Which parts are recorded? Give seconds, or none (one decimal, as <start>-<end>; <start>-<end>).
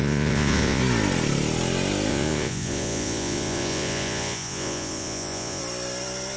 0.8-2.1; 5.6-6.4